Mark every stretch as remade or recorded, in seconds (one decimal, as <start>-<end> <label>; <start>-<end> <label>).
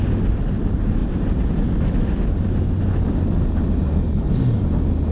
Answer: 0.0-5.1 recorded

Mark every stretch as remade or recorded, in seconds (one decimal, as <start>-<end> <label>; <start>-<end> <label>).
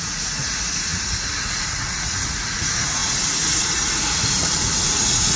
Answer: 0.0-5.4 remade